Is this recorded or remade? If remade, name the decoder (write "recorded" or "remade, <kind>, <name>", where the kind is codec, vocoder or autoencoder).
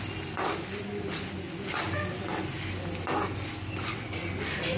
recorded